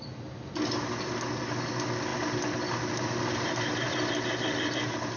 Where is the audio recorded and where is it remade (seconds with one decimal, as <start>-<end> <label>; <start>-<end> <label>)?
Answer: 0.0-5.2 recorded